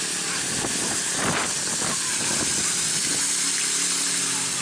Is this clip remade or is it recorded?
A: recorded